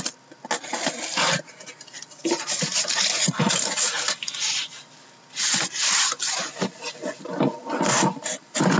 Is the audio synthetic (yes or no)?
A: no